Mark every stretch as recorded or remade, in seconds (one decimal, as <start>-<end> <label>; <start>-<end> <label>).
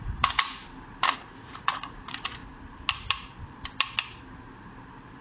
0.0-0.6 remade; 0.6-1.1 recorded; 1.1-2.4 remade; 2.4-5.2 recorded